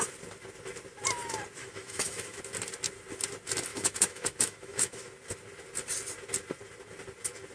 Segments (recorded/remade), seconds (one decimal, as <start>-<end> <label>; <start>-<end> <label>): 0.0-1.6 recorded; 1.6-2.4 remade; 2.4-3.7 recorded; 3.7-5.0 remade; 5.0-7.5 recorded